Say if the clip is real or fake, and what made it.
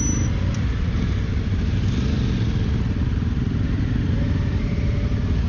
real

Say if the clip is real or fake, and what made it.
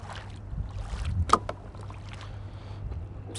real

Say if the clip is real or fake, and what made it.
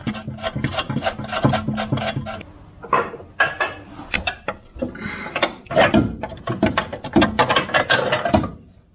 real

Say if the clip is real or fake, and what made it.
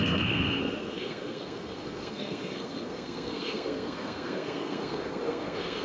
fake, codec, SNAC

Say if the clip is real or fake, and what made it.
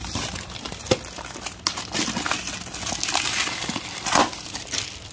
real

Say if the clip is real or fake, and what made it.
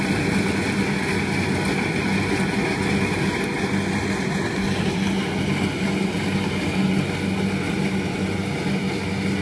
real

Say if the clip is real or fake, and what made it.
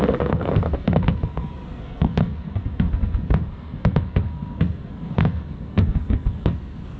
fake, codec, SNAC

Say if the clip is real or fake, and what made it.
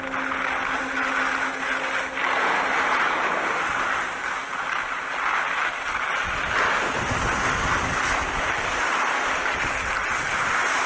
real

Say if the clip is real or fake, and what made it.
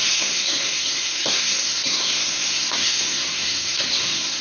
fake, codec, SNAC